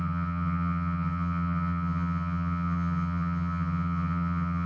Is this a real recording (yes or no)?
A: no